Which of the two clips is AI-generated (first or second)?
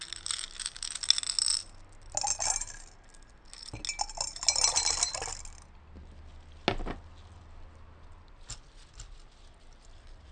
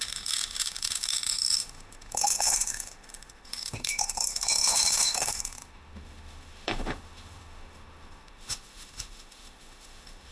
second